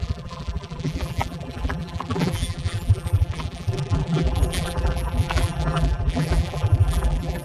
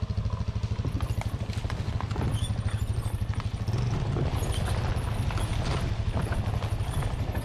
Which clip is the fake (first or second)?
first